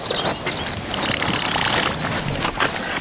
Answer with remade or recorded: recorded